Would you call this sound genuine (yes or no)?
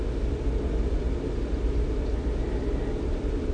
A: yes